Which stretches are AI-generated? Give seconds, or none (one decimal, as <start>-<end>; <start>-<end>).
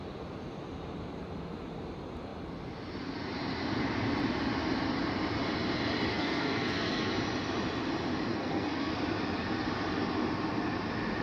6.1-7.1; 8.3-8.9